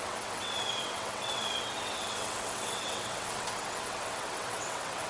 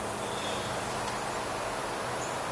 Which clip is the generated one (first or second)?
first